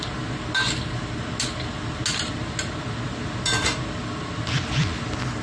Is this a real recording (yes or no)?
yes